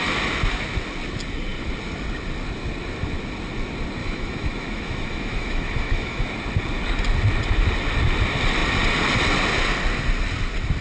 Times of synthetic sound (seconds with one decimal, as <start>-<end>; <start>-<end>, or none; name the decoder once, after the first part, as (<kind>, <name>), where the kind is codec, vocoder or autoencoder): 4.0-6.3 (autoencoder, DAC-VAE)

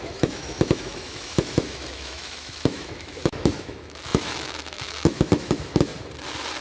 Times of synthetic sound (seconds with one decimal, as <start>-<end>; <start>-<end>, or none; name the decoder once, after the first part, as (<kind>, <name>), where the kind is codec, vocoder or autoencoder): 0.0-5.9 (autoencoder, DAC-VAE)

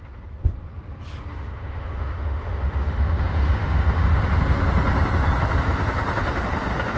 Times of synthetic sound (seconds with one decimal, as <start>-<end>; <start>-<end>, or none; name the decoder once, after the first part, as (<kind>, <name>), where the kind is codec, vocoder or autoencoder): 1.3-4.2 (autoencoder, DAC-VAE)